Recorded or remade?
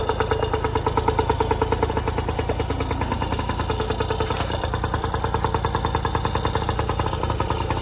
recorded